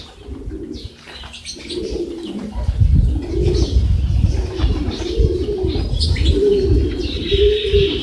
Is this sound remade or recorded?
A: recorded